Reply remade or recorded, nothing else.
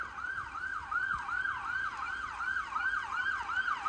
recorded